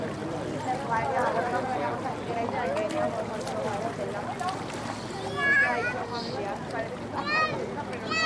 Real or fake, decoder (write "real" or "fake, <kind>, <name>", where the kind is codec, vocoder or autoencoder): real